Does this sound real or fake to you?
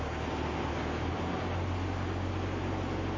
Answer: real